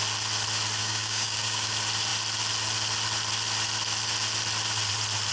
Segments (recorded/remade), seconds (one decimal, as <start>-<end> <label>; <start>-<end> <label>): 0.0-0.8 recorded; 0.8-1.7 remade; 1.7-5.3 recorded